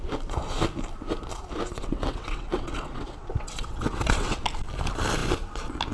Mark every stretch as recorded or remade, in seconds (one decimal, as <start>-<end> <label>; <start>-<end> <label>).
0.0-1.7 recorded; 1.7-4.4 remade; 4.4-5.9 recorded